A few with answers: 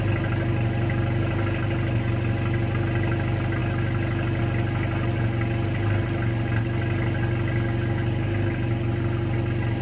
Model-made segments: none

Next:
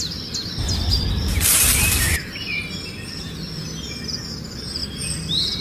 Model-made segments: none

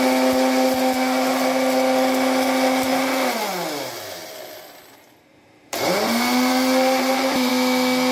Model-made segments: 5.3-7.5 (vocoder, BigVGAN v2)

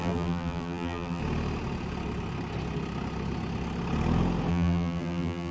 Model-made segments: 0.0-1.2 (vocoder, BigVGAN v2); 4.5-5.5

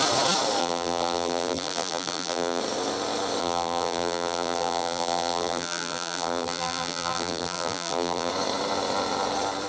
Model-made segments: 0.6-2.6 (vocoder, BigVGAN v2); 3.4-8.3